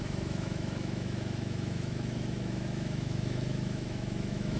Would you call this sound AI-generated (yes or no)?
yes